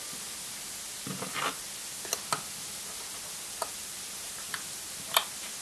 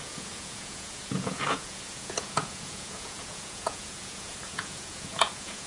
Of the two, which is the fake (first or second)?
second